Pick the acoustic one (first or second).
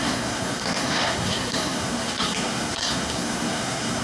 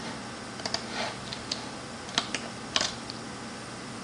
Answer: second